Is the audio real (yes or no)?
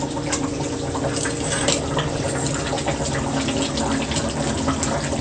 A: yes